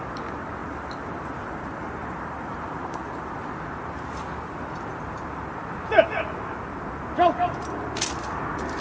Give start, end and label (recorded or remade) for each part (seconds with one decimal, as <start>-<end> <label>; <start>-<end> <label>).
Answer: 0.0-0.6 recorded; 0.6-3.6 remade; 3.6-8.8 recorded